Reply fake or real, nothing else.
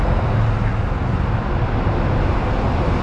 real